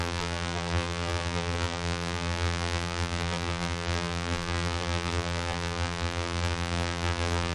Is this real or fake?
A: fake